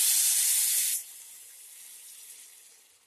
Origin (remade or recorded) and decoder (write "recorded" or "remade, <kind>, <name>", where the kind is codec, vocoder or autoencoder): recorded